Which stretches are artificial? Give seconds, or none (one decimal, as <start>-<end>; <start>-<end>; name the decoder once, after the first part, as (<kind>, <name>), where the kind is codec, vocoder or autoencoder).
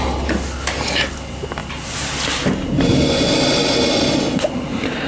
none